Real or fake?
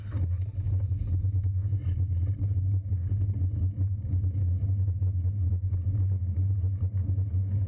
real